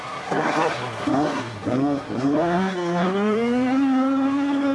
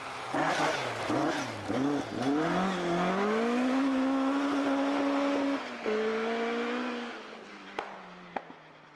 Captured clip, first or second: second